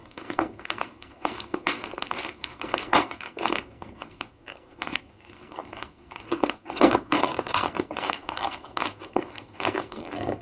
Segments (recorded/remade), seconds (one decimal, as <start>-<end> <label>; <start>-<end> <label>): 0.0-10.4 remade